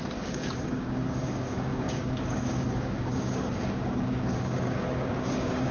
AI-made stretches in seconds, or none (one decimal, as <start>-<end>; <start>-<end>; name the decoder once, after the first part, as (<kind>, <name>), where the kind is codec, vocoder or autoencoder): 0.0-5.7 (codec, DAC)